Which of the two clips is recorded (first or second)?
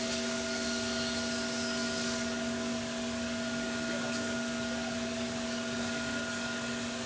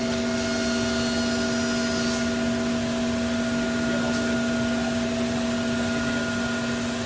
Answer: second